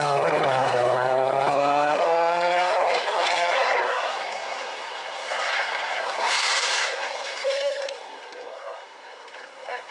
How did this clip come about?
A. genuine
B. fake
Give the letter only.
B